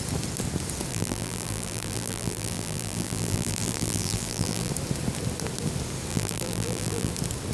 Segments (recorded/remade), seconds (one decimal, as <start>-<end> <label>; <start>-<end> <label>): 0.0-0.9 recorded; 0.9-4.7 remade; 4.7-6.1 recorded; 6.1-7.1 remade; 7.1-7.5 recorded